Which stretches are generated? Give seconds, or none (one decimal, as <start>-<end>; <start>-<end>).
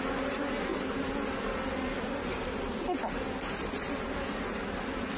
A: none